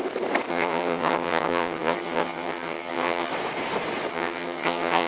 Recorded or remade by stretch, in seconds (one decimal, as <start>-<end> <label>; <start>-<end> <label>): 0.0-0.5 recorded; 0.5-3.3 remade; 3.3-4.1 recorded; 4.1-5.1 remade